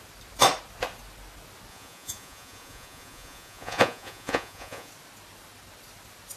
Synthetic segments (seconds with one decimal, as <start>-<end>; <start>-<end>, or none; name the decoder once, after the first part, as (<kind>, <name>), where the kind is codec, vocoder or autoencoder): 1.7-4.9 (vocoder, Vocos)